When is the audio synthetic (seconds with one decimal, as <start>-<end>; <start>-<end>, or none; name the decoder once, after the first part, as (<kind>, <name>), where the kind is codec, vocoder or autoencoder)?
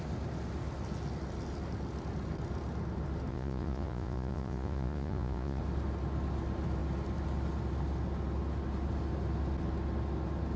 3.3-5.6 (vocoder, Vocos)